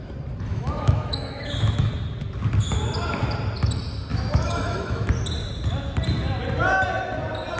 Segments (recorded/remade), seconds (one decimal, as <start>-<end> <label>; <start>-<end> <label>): 0.0-0.5 recorded; 0.5-1.9 remade; 1.9-4.1 recorded; 4.1-5.1 remade; 5.1-7.6 recorded